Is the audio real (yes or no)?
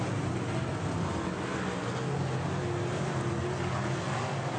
yes